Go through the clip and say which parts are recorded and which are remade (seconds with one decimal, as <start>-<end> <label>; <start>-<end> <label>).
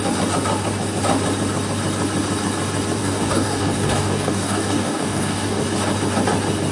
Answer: 0.0-3.0 recorded; 3.0-5.6 remade; 5.6-6.7 recorded